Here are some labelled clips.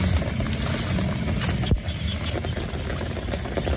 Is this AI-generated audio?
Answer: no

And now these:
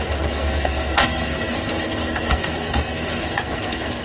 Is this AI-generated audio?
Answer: yes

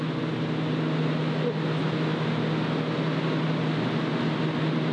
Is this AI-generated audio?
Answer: no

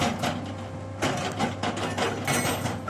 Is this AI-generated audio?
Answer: no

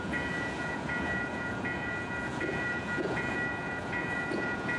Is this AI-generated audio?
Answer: yes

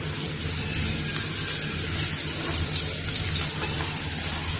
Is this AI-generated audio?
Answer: no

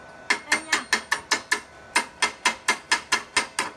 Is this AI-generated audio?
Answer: no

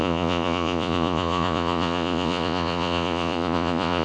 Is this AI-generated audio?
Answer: yes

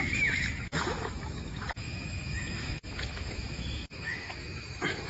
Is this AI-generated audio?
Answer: yes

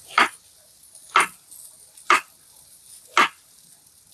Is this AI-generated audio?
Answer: no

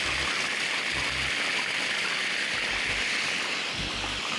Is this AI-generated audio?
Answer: no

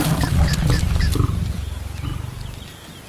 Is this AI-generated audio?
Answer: yes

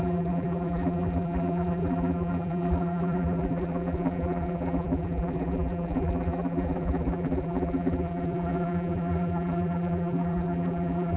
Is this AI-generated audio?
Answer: yes